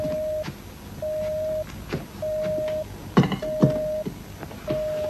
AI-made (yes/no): no